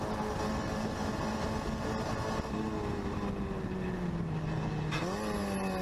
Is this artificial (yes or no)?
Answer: no